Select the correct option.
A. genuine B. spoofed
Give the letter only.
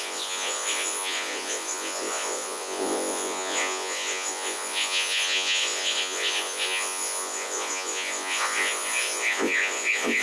B